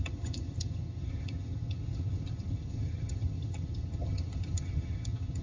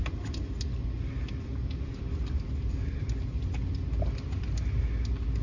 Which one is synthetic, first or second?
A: first